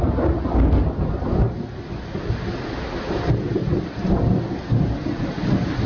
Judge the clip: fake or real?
real